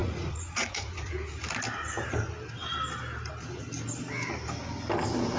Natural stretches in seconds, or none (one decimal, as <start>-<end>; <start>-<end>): 1.1-5.4